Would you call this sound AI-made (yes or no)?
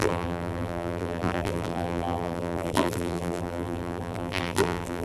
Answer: yes